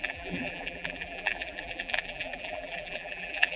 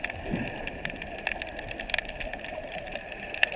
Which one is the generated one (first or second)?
first